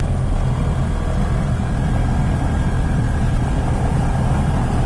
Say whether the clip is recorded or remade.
recorded